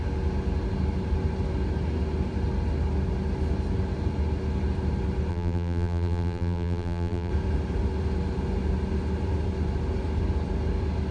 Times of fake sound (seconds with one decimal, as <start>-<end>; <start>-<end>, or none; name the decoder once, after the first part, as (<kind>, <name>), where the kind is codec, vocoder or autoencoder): 5.3-7.3 (vocoder, BigVGAN v2)